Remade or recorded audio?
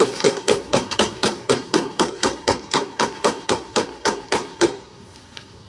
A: remade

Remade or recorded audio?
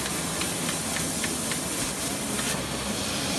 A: recorded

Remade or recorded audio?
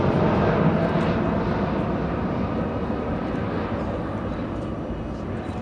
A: recorded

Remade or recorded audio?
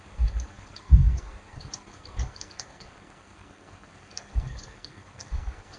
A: remade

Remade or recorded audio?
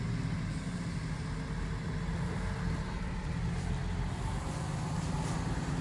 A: recorded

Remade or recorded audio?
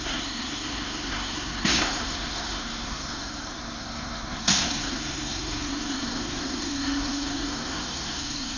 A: remade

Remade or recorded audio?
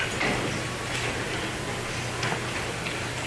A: recorded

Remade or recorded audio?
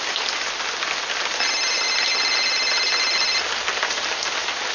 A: recorded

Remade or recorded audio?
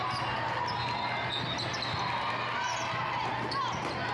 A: recorded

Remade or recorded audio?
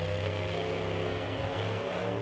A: remade